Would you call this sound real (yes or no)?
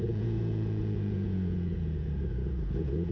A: no